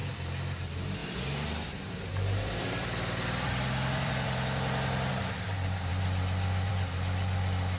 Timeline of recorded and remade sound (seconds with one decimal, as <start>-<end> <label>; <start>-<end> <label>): 0.0-0.6 remade; 0.6-1.0 recorded; 1.0-5.1 remade; 5.1-5.9 recorded; 5.9-6.7 remade; 6.7-7.8 recorded